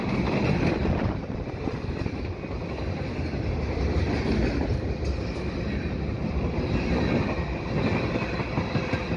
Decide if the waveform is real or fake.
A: real